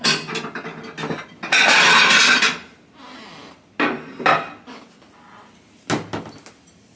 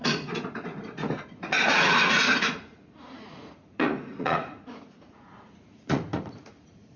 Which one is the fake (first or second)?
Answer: second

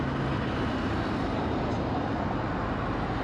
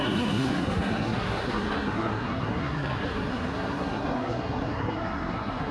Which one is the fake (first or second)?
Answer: second